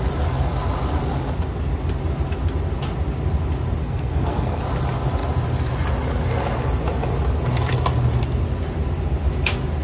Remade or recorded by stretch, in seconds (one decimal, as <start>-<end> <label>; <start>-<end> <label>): 0.0-3.8 recorded; 3.8-4.6 remade; 4.6-9.8 recorded